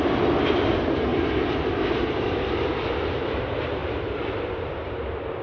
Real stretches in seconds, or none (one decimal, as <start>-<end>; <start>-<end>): 0.0-3.8; 4.7-5.4